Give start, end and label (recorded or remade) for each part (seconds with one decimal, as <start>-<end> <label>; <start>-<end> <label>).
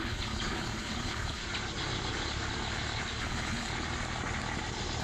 0.0-1.4 remade; 1.4-3.2 recorded; 3.2-3.7 remade; 3.7-5.0 recorded